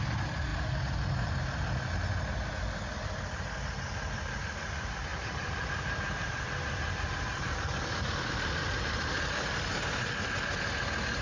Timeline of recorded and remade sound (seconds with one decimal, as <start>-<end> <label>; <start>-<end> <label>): 0.0-5.1 recorded; 5.1-8.9 remade; 8.9-11.2 recorded